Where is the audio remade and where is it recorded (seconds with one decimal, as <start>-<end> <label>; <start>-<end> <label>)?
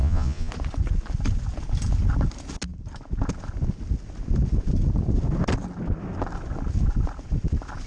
0.0-0.5 remade; 0.5-7.9 recorded